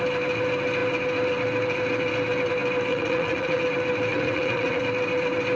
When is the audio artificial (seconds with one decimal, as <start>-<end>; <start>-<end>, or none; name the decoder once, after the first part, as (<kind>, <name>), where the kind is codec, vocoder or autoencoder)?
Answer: 2.9-3.6 (vocoder, WaveNeXt); 4.1-4.8